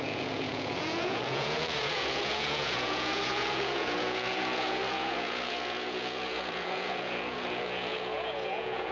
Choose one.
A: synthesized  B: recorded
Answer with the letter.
A